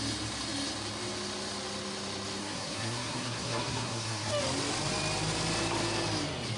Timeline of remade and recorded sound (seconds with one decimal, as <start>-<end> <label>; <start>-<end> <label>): 0.0-2.4 recorded; 2.4-4.3 remade; 4.3-6.6 recorded